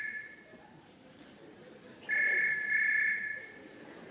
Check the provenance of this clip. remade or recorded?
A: recorded